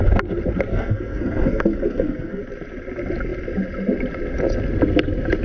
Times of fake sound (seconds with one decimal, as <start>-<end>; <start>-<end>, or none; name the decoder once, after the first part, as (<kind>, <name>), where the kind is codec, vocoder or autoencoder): 0.7-2.4 (codec, SNAC)